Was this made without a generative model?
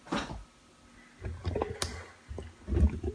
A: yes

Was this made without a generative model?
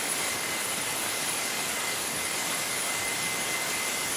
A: no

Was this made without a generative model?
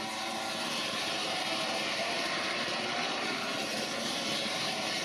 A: no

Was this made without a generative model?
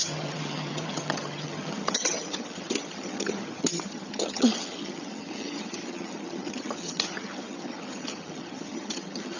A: no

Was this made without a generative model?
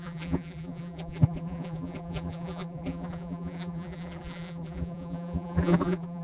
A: no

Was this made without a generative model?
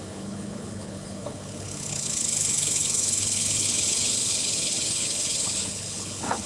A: no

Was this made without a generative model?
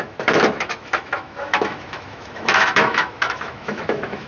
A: no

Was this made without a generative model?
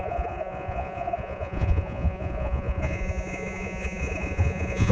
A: no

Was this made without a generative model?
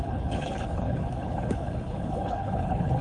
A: no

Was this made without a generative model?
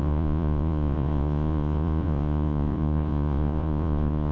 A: no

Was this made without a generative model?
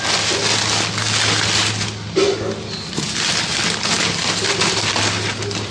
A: yes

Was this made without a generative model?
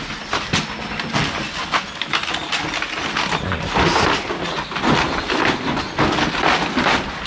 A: yes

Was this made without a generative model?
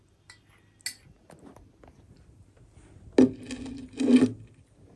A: yes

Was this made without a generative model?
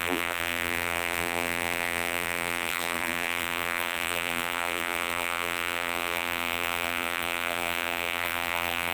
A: no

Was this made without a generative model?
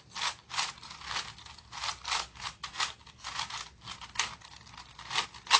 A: yes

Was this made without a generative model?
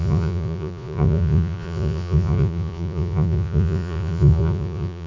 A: no